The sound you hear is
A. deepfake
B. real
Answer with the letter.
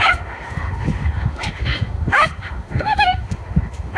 A